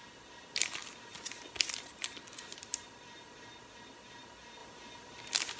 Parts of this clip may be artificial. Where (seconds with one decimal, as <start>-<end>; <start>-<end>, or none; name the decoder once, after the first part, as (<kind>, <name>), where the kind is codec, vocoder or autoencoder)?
none